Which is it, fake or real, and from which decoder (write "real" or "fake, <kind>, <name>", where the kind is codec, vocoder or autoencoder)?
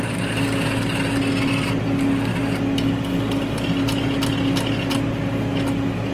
real